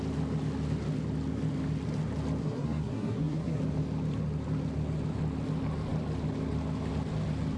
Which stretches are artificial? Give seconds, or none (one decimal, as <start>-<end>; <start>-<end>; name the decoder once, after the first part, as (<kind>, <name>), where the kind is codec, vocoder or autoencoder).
2.4-3.6 (codec, SNAC)